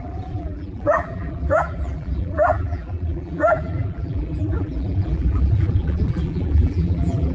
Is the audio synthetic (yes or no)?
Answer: yes